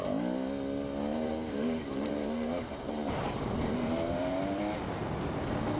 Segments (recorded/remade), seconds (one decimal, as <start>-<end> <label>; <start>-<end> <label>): 0.0-1.1 recorded; 1.1-4.6 remade; 4.6-5.8 recorded